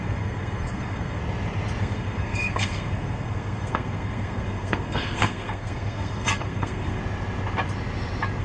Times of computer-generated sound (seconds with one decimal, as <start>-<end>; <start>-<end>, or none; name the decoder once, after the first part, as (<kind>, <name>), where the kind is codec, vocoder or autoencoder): 0.0-1.2 (codec, SNAC); 1.8-7.0